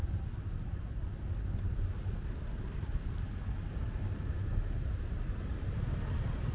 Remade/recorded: recorded